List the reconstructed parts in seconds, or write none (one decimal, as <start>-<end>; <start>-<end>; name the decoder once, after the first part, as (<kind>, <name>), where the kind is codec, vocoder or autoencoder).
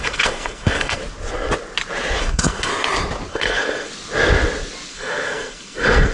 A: 0.0-1.0 (codec, SNAC); 2.2-2.7; 3.3-3.9; 4.9-6.1